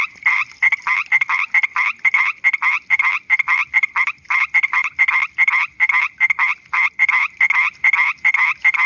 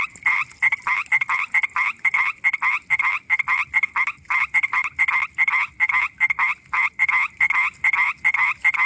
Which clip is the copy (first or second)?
first